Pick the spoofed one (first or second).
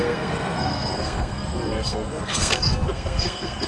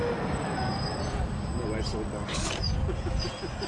first